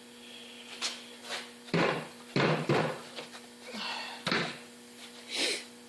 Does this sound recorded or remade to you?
remade